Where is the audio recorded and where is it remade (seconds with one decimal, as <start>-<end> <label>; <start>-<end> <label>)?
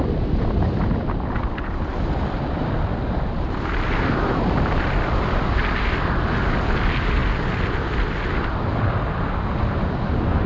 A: 0.0-10.5 recorded